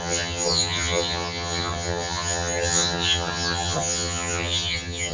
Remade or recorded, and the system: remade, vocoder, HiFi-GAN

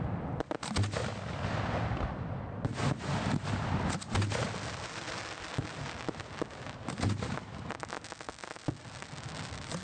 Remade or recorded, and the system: recorded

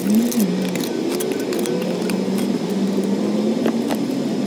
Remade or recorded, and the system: recorded